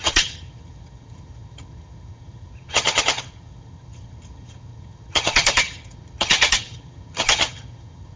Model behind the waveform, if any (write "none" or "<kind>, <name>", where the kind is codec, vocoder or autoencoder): vocoder, HiFi-GAN